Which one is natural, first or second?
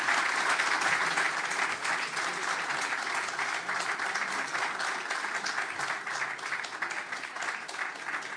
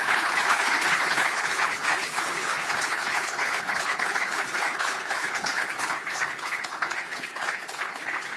first